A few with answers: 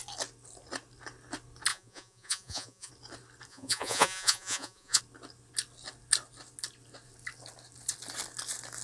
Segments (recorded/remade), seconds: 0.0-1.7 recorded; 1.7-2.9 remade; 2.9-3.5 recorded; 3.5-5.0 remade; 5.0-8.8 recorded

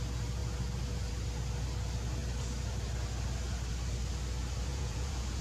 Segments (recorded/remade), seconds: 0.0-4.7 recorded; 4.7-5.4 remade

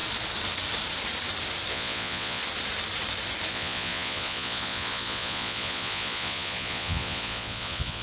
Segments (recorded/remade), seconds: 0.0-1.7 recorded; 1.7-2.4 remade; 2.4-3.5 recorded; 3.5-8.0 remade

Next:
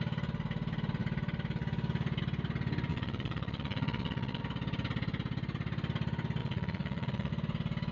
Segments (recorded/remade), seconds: 0.0-2.9 recorded; 2.9-4.4 remade; 4.4-6.4 recorded; 6.4-7.3 remade; 7.3-7.9 recorded